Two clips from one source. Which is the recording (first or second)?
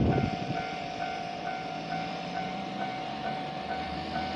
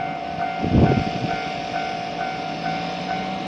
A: second